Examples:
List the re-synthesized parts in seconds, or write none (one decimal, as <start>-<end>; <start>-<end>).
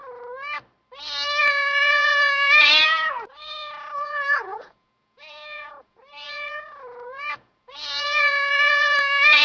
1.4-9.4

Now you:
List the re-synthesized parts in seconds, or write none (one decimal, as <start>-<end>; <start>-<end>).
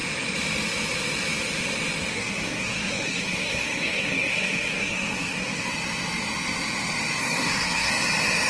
2.1-5.7; 7.2-7.9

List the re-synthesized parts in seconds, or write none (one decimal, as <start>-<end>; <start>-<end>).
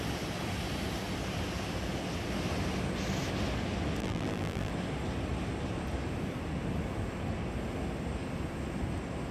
4.0-4.7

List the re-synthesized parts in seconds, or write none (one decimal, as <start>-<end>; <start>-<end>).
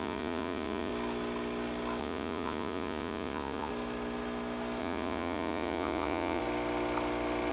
0.0-0.9; 2.0-3.7; 4.8-6.4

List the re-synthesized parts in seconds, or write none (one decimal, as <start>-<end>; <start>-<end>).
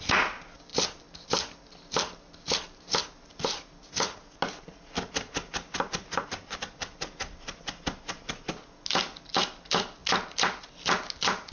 none